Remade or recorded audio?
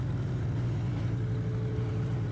remade